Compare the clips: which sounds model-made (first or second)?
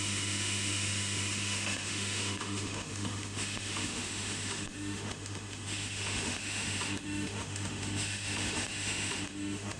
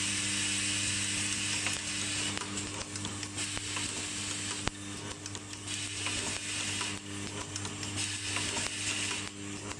first